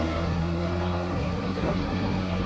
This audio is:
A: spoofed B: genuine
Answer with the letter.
A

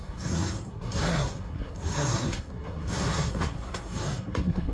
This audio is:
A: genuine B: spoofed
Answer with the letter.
B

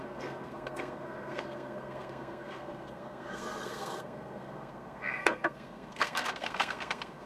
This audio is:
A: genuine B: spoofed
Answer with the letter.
B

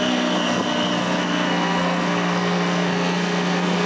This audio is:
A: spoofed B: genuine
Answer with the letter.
A